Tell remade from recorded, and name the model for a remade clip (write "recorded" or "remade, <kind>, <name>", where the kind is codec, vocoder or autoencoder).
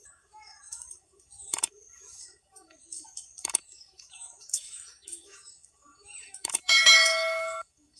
remade, autoencoder, DAC-VAE